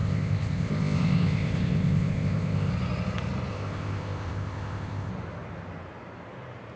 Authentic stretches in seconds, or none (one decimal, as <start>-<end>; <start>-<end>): 2.7-3.5; 5.1-6.8